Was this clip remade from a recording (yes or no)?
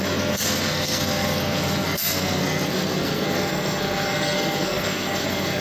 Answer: yes